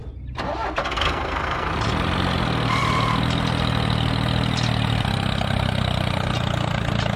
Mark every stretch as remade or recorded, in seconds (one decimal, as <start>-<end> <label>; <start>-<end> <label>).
0.0-0.8 recorded; 0.8-1.7 remade; 1.7-7.2 recorded